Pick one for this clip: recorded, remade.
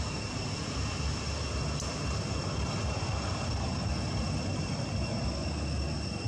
recorded